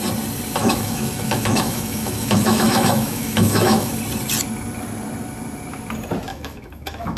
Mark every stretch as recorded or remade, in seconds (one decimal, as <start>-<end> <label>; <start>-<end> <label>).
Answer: 0.0-0.6 recorded; 0.6-3.9 remade; 3.9-6.3 recorded; 6.3-7.2 remade